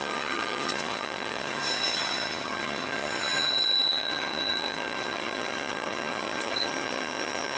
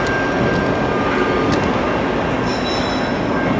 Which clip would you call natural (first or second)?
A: second